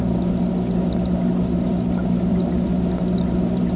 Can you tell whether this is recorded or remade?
recorded